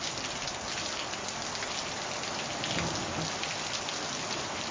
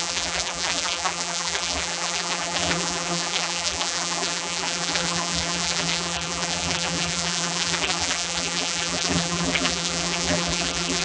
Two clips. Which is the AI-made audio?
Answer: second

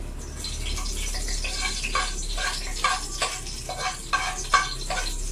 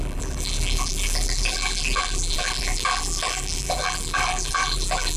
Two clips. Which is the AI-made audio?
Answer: second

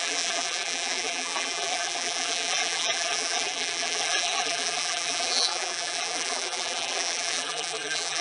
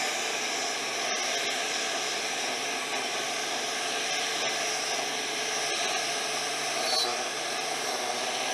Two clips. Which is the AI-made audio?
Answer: first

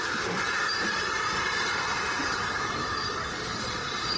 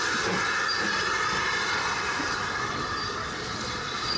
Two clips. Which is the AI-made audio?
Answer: first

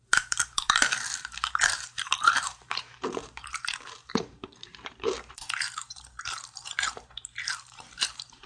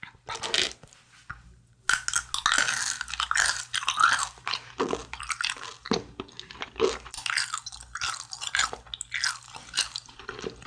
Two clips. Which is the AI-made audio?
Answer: first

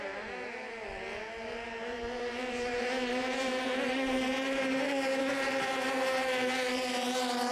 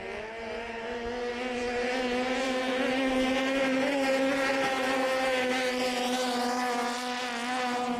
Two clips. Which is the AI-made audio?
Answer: first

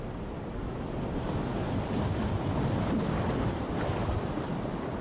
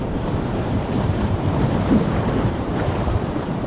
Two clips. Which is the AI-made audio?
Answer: second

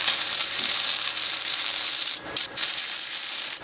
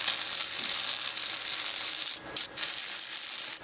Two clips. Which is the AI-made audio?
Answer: first